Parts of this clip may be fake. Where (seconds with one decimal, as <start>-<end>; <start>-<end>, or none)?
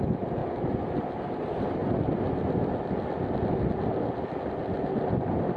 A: 0.0-0.4; 1.2-1.8